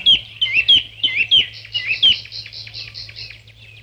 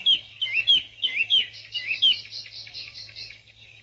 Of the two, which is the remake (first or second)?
second